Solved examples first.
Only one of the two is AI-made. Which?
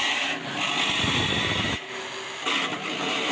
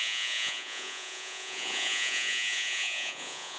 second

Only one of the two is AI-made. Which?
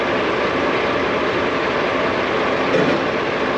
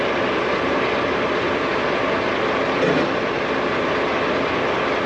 first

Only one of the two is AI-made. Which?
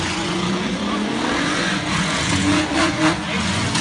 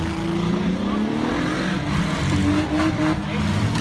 first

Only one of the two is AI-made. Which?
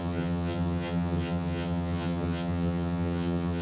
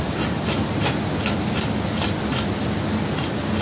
first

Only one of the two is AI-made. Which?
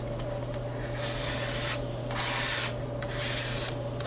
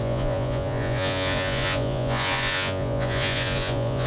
second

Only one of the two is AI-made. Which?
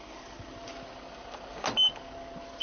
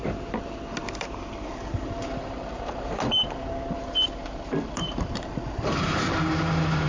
second